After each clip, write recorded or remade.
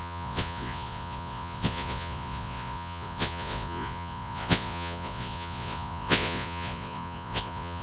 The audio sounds remade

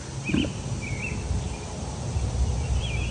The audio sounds recorded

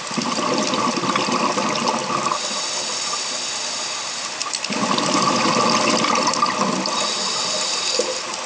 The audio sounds recorded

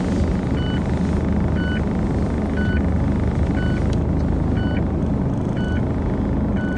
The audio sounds recorded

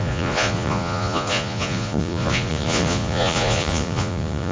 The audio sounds remade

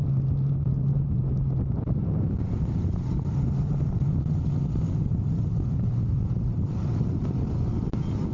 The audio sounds recorded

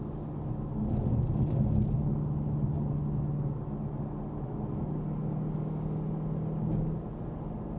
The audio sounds recorded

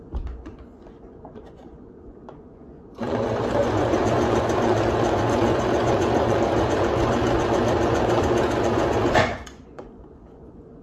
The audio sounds remade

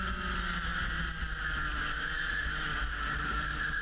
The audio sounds recorded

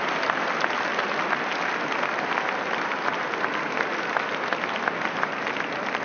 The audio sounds recorded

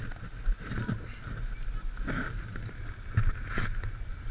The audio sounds recorded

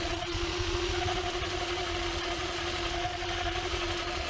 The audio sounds remade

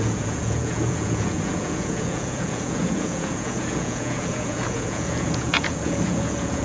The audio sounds remade